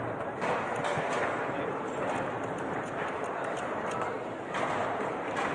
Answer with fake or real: real